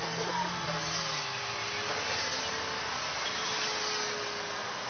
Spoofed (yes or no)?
no